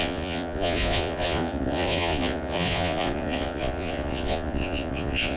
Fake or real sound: fake